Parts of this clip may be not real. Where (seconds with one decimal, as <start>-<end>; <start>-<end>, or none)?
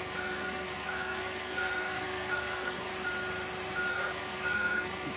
0.0-2.9; 3.9-5.2